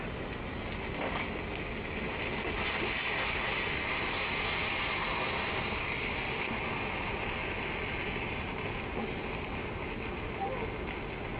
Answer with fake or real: real